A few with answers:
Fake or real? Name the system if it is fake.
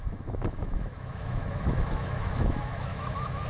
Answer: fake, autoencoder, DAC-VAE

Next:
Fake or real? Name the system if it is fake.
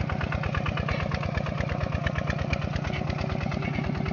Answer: real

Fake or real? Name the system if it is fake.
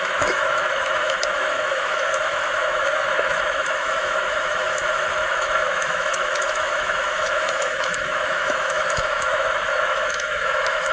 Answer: fake, autoencoder, DAC-VAE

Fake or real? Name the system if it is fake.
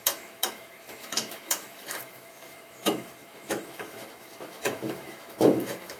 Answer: fake, autoencoder, DAC-VAE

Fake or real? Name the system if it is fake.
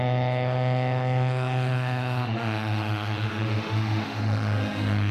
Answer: fake, autoencoder, DAC-VAE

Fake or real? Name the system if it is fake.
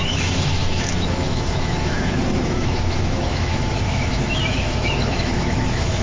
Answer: fake, autoencoder, DAC-VAE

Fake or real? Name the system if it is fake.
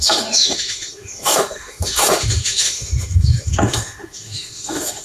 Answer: fake, autoencoder, DAC-VAE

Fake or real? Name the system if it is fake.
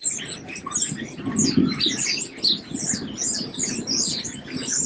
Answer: real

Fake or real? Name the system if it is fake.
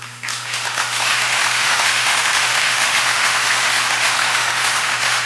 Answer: fake, autoencoder, DAC-VAE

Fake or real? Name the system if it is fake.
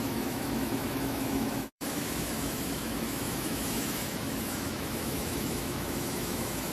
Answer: fake, autoencoder, DAC-VAE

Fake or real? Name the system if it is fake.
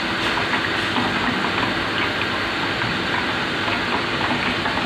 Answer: real